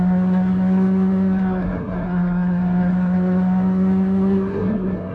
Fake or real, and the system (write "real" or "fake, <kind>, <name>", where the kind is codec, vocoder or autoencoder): fake, codec, SNAC